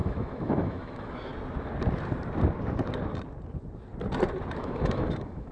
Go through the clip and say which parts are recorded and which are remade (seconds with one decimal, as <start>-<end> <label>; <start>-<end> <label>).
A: 0.0-1.3 remade; 1.3-4.6 recorded; 4.6-5.5 remade